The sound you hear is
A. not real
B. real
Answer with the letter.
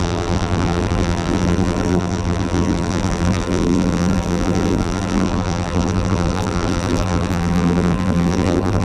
A